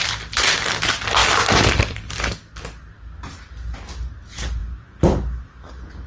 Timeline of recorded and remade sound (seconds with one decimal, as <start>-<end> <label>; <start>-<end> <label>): 0.0-1.2 recorded; 1.2-2.1 remade; 2.1-6.1 recorded